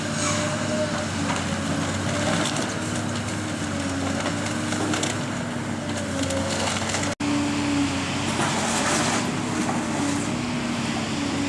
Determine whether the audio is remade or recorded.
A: recorded